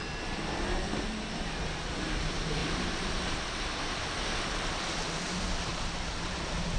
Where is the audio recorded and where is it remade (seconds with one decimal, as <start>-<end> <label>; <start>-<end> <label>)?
0.0-2.6 recorded; 2.6-3.6 remade; 3.6-5.7 recorded; 5.7-6.8 remade